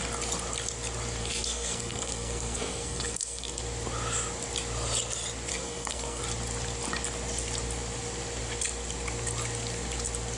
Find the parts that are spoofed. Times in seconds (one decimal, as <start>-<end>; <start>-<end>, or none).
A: 1.2-3.6; 5.5-6.2